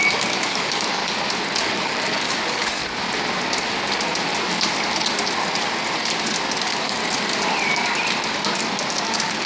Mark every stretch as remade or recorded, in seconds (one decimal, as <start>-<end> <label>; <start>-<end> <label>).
0.0-1.0 remade; 1.0-1.6 recorded; 1.6-2.8 remade; 2.8-6.6 recorded; 6.6-7.0 remade; 7.0-9.0 recorded; 9.0-9.5 remade